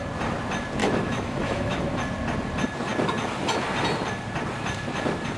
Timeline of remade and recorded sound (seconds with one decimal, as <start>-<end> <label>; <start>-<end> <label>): 0.0-0.8 recorded; 0.8-1.8 remade; 1.8-5.4 recorded